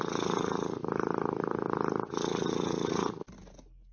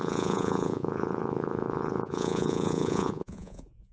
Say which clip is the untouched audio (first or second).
first